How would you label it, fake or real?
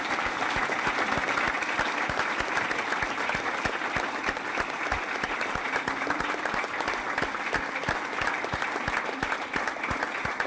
real